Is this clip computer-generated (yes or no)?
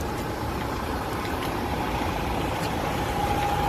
yes